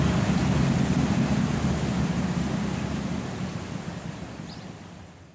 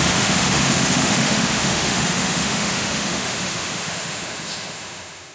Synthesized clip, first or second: second